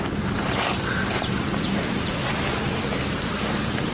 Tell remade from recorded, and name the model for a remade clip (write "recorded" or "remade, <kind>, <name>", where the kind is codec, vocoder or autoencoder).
remade, vocoder, BigVGAN v2